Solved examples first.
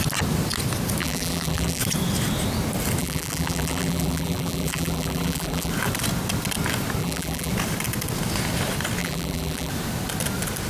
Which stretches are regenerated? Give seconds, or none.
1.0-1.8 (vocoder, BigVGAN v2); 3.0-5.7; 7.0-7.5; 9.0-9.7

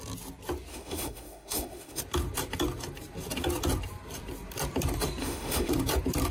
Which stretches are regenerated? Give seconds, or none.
0.7-2.0 (autoencoder, DAC-VAE); 5.2-5.7

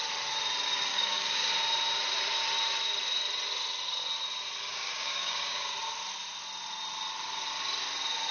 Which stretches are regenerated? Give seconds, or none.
0.9-1.5 (codec, DAC); 4.7-5.7